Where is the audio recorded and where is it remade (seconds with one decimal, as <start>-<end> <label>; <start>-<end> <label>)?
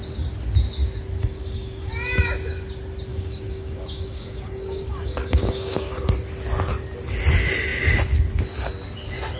0.0-1.2 recorded; 1.2-1.9 remade; 1.9-3.1 recorded; 3.1-6.0 remade; 6.0-9.4 recorded